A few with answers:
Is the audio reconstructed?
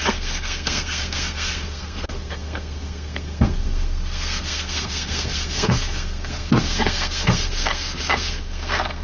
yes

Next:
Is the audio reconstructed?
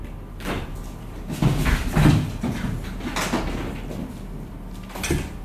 no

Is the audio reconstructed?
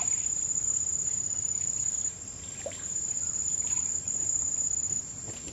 yes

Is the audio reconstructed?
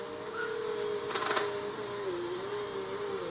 no